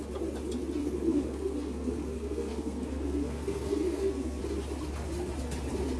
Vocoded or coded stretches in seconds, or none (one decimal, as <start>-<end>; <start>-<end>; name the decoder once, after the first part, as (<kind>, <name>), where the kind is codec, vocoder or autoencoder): 0.8-4.4 (codec, SNAC)